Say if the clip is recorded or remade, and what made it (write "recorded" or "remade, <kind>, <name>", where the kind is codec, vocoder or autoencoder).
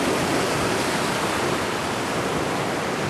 recorded